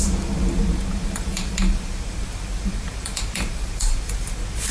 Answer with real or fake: fake